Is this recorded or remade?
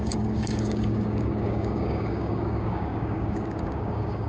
remade